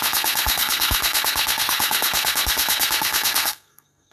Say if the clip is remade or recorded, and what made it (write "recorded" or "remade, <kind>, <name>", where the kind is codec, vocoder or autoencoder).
remade, codec, SNAC